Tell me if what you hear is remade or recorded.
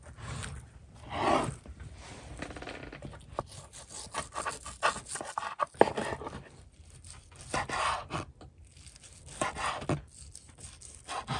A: recorded